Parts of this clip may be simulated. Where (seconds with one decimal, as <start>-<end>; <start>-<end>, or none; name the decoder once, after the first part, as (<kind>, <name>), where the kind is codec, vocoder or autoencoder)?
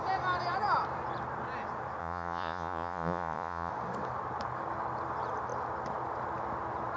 2.0-3.7 (vocoder, Vocos)